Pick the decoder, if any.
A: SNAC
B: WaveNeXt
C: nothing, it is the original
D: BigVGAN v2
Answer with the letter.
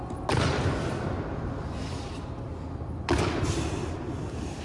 C